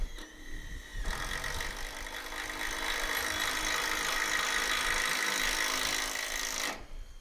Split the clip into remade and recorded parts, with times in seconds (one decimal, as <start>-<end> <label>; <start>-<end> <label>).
0.0-7.2 recorded